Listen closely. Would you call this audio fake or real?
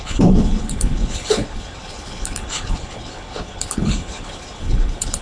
fake